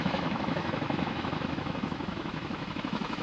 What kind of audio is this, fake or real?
fake